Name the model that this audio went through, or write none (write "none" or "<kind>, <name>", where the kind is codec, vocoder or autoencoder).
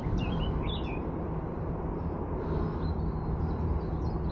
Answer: none